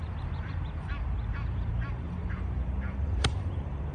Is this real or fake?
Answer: fake